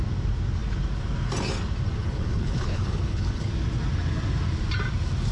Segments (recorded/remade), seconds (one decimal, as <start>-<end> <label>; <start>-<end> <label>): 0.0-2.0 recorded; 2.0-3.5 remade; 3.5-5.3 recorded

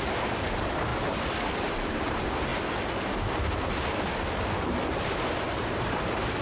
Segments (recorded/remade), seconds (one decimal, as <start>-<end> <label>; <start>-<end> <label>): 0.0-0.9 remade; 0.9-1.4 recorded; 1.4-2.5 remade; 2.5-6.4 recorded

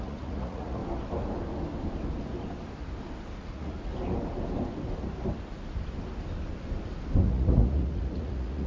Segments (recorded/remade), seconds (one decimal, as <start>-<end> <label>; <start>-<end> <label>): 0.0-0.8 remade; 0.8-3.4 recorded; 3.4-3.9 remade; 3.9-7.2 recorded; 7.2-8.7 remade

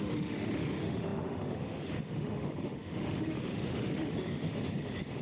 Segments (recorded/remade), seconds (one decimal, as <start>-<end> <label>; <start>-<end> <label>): 0.0-5.2 remade